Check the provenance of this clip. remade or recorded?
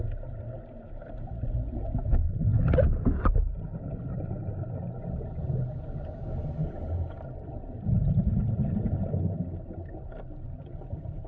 recorded